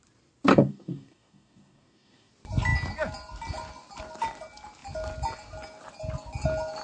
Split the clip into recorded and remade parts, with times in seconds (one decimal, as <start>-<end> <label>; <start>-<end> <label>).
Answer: 0.0-0.5 recorded; 0.5-2.3 remade; 2.3-6.8 recorded